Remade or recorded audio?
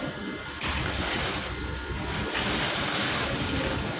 recorded